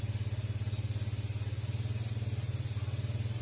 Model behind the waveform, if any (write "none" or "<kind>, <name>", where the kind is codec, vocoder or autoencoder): none